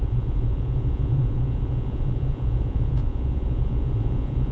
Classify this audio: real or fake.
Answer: fake